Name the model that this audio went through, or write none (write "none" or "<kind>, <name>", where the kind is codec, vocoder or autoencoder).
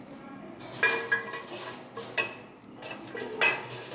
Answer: none